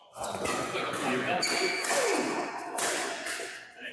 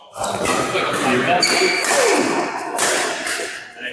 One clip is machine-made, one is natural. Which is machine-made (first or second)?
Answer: first